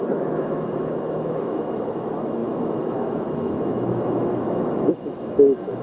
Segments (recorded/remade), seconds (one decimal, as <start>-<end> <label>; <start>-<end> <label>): 0.0-5.8 remade